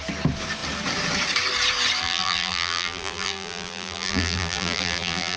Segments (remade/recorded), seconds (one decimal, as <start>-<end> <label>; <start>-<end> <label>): 0.0-2.0 recorded; 2.0-5.4 remade